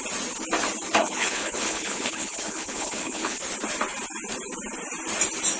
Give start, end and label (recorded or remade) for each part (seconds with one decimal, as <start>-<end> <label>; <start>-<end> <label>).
0.0-1.0 recorded; 1.0-3.4 remade; 3.4-5.6 recorded